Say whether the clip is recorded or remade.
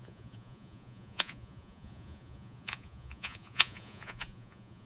remade